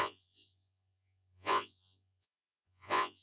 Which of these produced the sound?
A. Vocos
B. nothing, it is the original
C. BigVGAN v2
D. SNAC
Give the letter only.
A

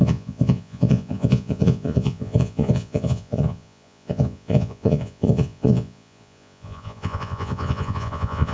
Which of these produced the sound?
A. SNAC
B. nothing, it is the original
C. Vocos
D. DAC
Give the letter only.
C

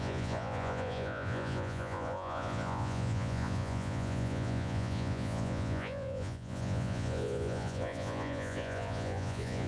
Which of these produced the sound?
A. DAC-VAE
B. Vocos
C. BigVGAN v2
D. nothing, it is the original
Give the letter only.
B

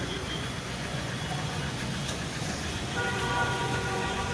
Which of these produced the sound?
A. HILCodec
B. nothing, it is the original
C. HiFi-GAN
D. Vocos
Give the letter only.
D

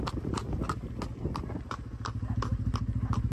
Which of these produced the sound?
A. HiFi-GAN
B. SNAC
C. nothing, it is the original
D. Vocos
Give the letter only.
C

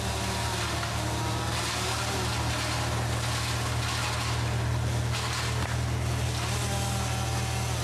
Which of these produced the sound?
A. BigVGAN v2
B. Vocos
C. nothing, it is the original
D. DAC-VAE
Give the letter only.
C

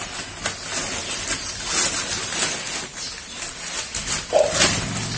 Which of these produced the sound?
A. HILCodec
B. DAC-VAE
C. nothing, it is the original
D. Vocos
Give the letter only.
C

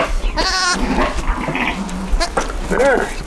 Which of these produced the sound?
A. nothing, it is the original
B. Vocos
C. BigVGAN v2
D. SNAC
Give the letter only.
A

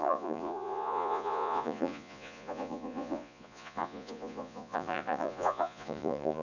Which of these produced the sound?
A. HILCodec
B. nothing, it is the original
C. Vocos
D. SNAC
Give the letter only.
C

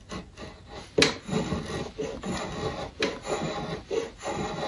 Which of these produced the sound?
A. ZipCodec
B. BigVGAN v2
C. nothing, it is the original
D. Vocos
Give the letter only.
C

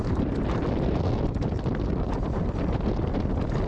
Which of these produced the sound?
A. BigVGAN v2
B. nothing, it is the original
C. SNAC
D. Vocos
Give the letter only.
B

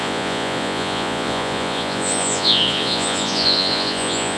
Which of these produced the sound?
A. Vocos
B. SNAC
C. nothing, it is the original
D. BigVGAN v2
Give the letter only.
A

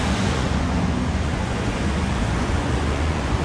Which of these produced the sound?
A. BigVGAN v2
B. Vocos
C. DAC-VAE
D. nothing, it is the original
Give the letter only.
B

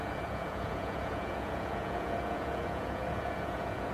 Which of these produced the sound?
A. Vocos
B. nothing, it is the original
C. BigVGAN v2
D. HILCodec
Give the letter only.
A